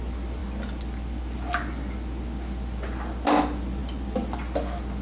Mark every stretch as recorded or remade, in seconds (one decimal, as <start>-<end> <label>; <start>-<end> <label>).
0.0-5.0 recorded